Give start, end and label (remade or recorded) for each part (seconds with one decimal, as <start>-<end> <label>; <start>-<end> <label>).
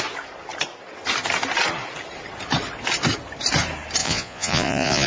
0.0-4.0 recorded; 4.0-5.1 remade